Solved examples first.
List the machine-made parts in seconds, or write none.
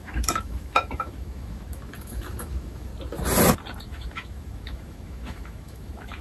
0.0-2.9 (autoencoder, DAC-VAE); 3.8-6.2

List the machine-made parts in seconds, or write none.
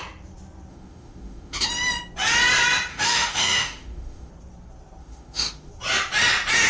0.7-1.7 (autoencoder, DAC-VAE); 2.9-4.3; 5.0-5.7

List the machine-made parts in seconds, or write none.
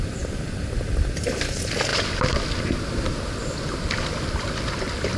none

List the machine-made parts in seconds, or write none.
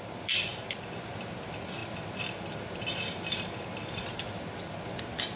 none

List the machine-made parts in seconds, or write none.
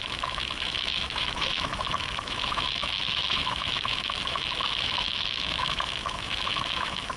0.0-7.2 (autoencoder, DAC-VAE)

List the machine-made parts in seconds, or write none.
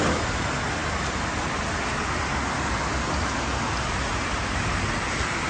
none